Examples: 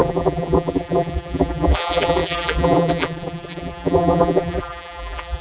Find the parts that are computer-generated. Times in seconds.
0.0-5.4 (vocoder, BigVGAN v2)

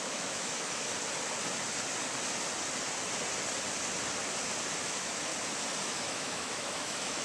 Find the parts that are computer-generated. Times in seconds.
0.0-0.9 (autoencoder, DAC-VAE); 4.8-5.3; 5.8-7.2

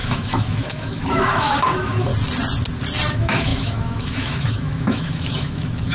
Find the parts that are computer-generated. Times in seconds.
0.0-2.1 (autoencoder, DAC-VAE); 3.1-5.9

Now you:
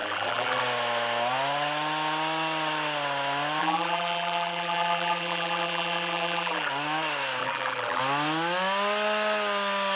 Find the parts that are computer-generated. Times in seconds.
0.0-0.6 (vocoder, BigVGAN v2); 3.6-6.7; 7.4-8.0